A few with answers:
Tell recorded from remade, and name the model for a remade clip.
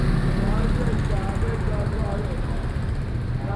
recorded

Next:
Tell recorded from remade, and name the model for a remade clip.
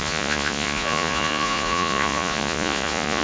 remade, vocoder, Vocos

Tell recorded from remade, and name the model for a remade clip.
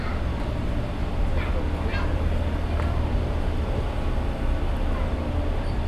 recorded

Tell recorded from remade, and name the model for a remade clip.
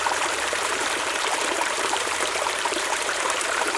remade, vocoder, BigVGAN v2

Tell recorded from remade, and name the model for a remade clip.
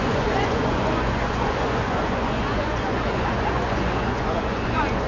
remade, vocoder, Vocos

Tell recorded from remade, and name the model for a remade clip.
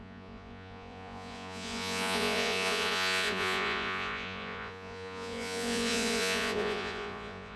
remade, vocoder, Vocos